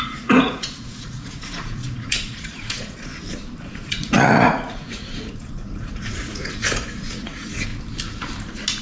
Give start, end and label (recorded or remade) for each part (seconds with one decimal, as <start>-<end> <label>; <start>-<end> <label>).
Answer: 0.0-3.1 remade; 3.1-3.7 recorded; 3.7-7.7 remade; 7.7-8.8 recorded